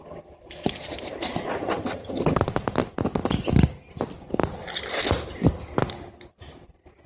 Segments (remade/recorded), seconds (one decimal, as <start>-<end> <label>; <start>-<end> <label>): 0.0-1.6 recorded; 1.6-2.4 remade; 2.4-7.1 recorded